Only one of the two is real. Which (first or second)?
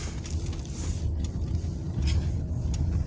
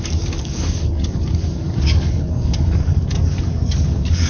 first